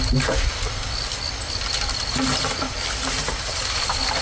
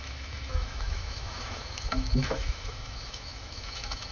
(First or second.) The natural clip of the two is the first